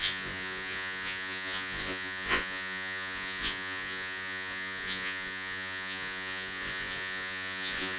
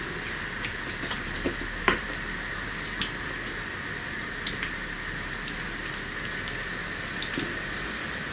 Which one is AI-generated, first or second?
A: first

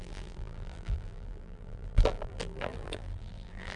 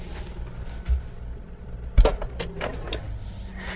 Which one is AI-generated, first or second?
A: first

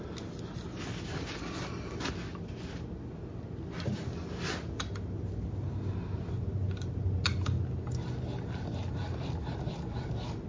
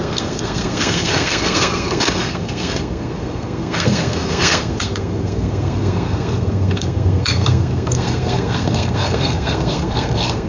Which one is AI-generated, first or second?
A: second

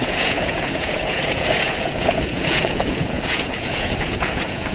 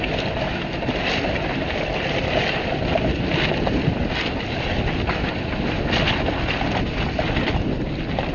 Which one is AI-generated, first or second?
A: first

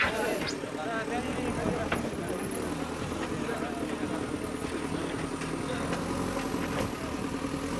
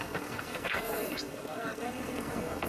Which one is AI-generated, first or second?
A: second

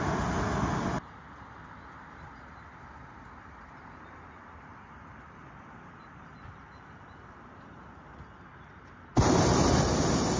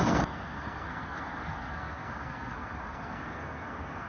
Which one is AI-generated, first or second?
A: second